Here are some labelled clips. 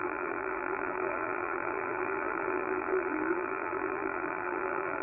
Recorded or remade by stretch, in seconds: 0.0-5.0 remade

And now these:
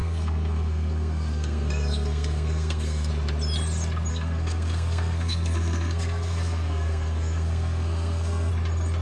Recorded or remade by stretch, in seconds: 0.0-3.1 remade; 3.1-4.1 recorded; 4.1-8.5 remade; 8.5-9.0 recorded

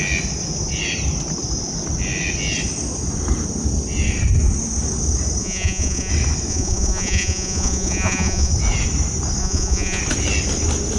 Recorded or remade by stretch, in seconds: 0.0-5.4 recorded; 5.4-6.1 remade; 6.1-6.5 recorded; 6.5-8.5 remade; 8.5-9.4 recorded; 9.4-10.0 remade; 10.0-11.0 recorded